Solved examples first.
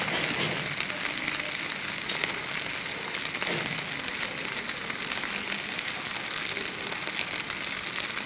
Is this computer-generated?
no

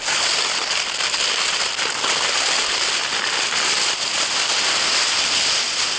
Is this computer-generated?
no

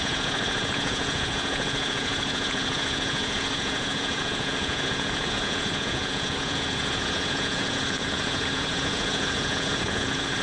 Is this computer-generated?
yes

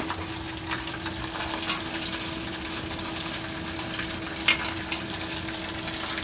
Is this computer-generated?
no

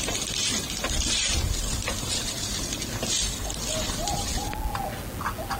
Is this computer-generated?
no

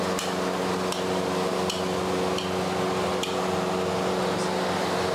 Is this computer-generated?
no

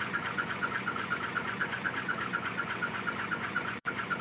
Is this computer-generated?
yes